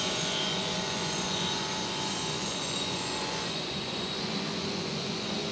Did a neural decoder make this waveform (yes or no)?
yes